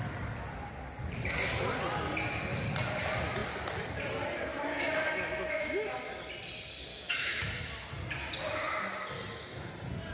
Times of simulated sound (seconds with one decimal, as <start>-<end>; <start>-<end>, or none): 4.5-6.0; 6.9-7.5